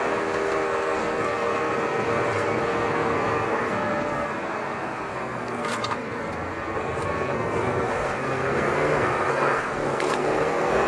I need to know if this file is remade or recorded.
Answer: remade